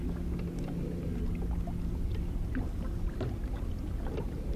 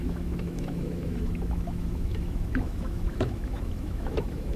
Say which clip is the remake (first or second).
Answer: second